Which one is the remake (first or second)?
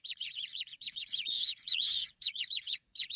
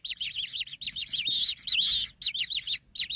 first